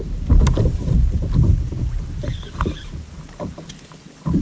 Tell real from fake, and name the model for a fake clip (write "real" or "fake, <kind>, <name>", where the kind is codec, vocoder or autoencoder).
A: real